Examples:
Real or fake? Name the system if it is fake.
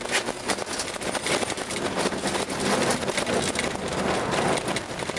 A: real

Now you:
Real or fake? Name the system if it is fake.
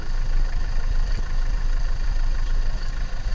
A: fake, vocoder, BigVGAN v2